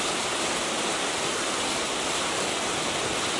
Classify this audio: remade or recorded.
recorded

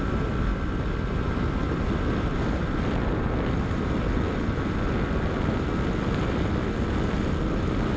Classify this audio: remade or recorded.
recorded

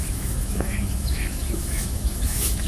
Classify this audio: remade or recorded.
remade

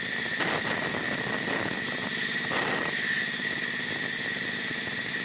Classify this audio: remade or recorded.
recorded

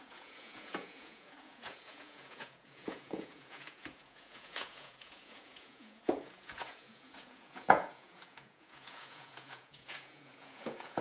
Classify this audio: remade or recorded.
remade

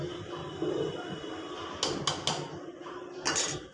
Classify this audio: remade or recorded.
recorded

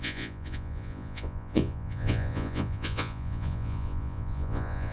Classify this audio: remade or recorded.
remade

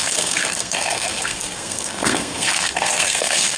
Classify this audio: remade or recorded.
remade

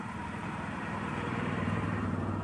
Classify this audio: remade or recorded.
remade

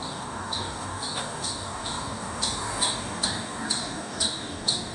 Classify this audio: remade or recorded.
remade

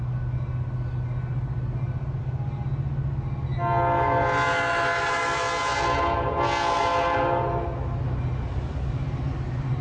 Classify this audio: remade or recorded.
recorded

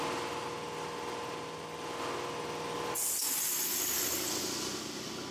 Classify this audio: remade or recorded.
recorded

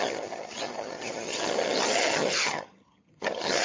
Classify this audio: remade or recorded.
remade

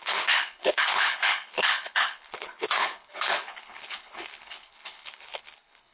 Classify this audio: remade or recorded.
remade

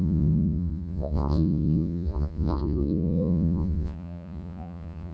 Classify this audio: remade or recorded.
remade